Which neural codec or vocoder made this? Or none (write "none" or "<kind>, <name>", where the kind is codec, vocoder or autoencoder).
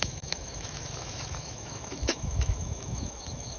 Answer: autoencoder, DAC-VAE